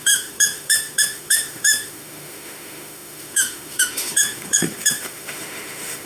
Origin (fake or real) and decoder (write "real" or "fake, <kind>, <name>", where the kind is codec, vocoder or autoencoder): fake, autoencoder, DAC-VAE